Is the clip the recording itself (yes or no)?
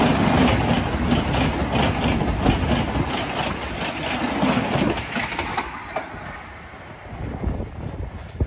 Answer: yes